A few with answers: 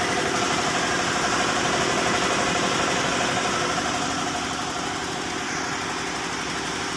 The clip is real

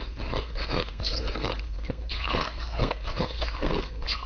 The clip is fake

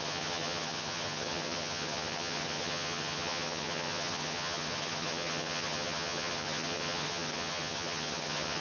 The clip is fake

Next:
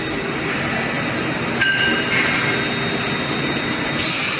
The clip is real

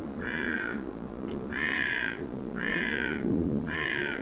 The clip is fake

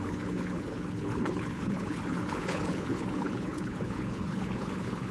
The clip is fake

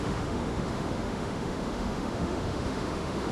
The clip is fake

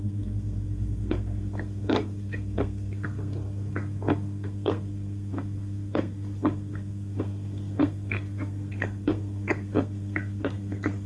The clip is fake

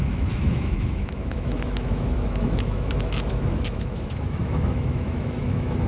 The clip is fake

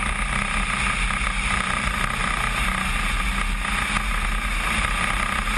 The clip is real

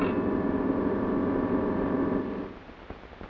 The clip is real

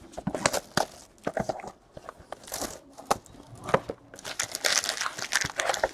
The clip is real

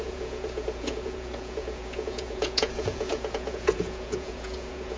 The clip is fake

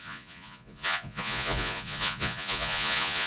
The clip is fake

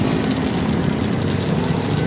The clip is real